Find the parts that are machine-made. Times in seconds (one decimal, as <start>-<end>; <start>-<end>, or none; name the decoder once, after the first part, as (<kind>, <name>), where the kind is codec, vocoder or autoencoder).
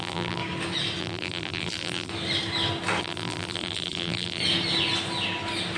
0.0-0.4 (vocoder, BigVGAN v2); 1.0-2.1; 3.0-4.4